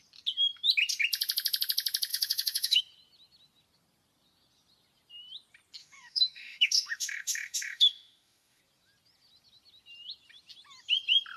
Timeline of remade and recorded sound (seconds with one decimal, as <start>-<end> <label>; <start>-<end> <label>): 0.0-2.1 recorded; 2.1-2.8 remade; 2.8-5.8 recorded; 5.8-8.6 remade; 8.6-11.4 recorded